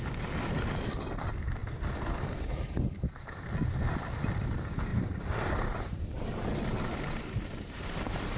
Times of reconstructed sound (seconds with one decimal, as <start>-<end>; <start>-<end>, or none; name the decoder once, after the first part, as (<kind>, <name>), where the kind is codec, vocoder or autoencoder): 4.9-6.0 (vocoder, BigVGAN v2); 6.9-8.4